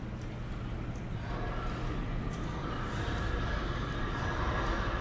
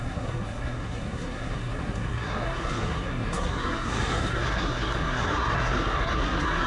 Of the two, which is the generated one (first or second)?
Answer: second